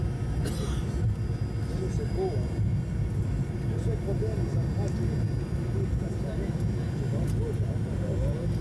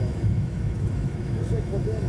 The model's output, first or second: second